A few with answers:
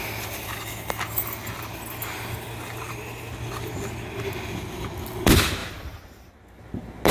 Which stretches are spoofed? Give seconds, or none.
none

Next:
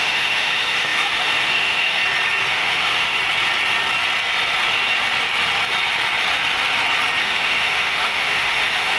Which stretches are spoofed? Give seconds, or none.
0.0-2.0 (autoencoder, DAC-VAE); 2.5-3.2; 7.2-9.0

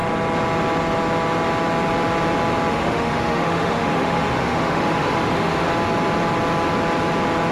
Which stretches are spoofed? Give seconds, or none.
2.7-5.7 (autoencoder, DAC-VAE)